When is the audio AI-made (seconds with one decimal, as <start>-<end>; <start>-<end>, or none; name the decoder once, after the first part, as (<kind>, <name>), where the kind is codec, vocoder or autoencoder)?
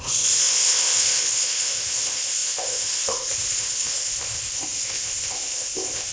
0.0-6.1 (codec, ZipCodec)